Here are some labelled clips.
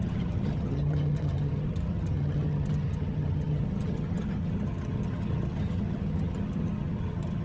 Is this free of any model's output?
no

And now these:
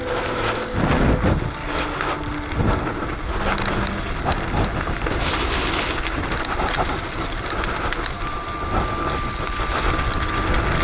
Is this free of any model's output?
yes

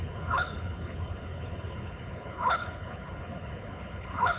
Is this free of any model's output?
no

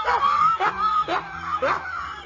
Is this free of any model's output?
yes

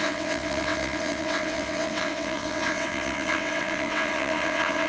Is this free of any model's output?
no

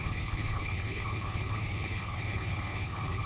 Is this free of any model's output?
no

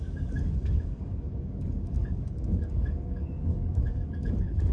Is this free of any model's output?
no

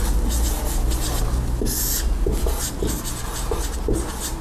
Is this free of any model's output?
yes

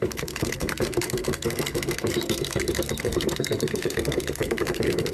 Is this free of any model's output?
no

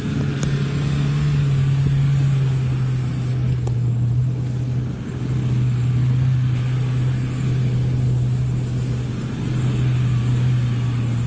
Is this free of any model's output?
yes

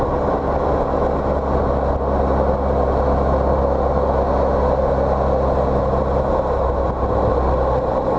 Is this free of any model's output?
yes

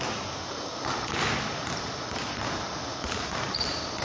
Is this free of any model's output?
no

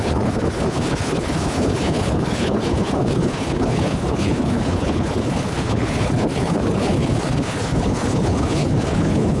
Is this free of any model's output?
no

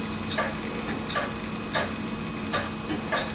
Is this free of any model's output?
yes